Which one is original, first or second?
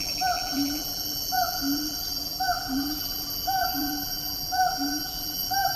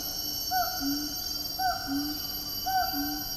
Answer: second